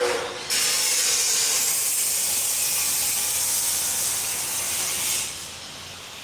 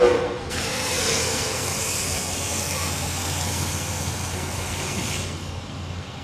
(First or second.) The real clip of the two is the first